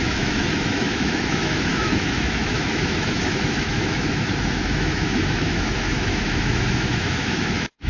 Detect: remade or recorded remade